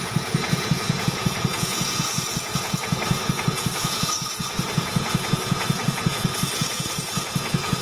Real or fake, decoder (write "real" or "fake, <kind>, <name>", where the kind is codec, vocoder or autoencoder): fake, vocoder, Vocos